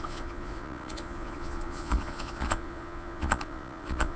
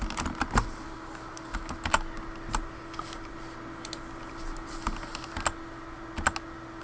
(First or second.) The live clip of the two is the second